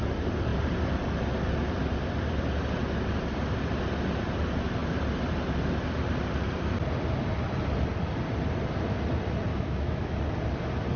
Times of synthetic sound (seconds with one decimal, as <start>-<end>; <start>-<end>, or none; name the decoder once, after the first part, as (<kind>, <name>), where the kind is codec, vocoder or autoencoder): 9.5-10.2 (autoencoder, DAC-VAE)